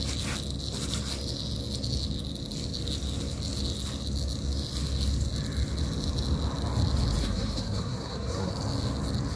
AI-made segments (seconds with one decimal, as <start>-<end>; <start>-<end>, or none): 7.2-8.5

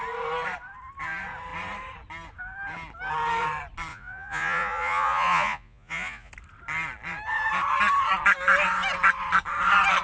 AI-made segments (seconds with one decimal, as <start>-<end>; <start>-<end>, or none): 3.9-6.3

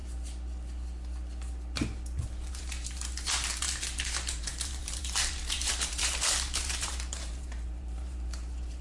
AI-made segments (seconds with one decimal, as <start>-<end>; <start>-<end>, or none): 2.5-8.8

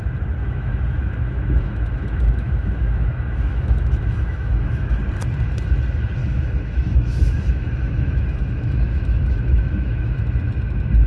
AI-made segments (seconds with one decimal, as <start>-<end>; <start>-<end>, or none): 0.4-5.0; 6.2-10.2

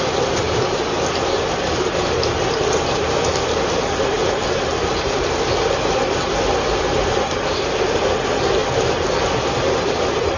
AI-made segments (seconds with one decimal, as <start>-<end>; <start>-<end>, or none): none